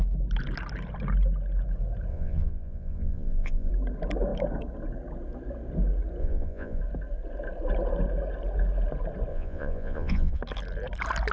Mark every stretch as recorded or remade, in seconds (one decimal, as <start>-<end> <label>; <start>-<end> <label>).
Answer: 0.0-2.1 recorded; 2.1-3.7 remade; 3.7-6.2 recorded; 6.2-6.8 remade; 6.8-9.3 recorded; 9.3-10.4 remade; 10.4-11.3 recorded

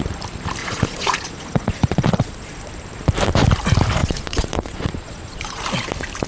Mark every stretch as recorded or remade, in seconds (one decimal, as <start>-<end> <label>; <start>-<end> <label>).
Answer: 0.0-0.6 recorded; 0.6-2.7 remade; 2.7-4.0 recorded; 4.0-5.6 remade; 5.6-6.3 recorded

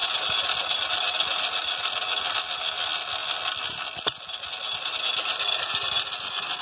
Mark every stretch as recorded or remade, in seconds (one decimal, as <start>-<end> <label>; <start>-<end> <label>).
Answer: 0.0-6.6 recorded

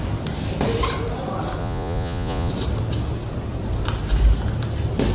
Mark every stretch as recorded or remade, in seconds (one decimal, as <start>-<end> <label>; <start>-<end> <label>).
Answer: 0.0-1.6 recorded; 1.6-2.5 remade; 2.5-5.1 recorded

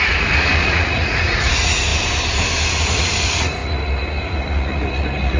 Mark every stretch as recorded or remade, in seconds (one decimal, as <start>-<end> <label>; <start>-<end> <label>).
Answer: 0.0-1.9 remade; 1.9-2.7 recorded; 2.7-5.4 remade

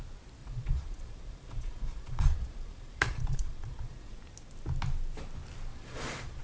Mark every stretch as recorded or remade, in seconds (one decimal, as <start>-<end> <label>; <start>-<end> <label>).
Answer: 0.0-0.4 recorded; 0.4-4.2 remade; 4.2-5.7 recorded; 5.7-6.4 remade

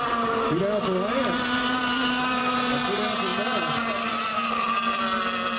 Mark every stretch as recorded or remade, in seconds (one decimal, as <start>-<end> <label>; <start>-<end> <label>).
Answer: 0.0-5.6 recorded